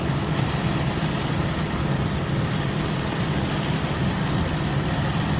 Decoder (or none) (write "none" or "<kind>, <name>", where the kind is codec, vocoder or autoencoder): none